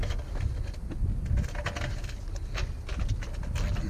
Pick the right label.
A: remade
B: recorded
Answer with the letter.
B